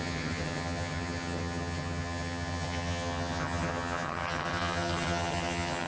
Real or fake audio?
fake